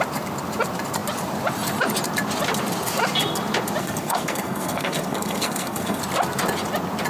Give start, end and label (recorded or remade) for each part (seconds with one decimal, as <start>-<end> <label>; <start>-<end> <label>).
0.0-3.8 recorded; 3.8-6.0 remade; 6.0-7.1 recorded